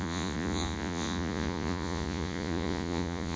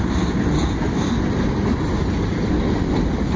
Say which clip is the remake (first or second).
first